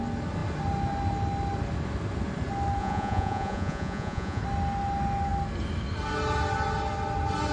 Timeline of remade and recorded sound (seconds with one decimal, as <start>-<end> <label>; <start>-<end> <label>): 0.0-2.8 recorded; 2.8-4.4 remade; 4.4-7.5 recorded